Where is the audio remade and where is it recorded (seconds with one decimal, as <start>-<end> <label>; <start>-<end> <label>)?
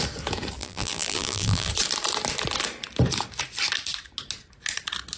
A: 0.0-0.6 recorded; 0.6-1.7 remade; 1.7-5.2 recorded